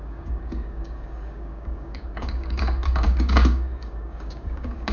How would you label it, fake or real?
fake